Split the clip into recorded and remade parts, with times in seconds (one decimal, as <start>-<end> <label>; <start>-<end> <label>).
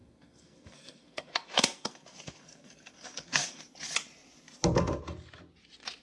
0.0-3.6 remade; 3.6-6.0 recorded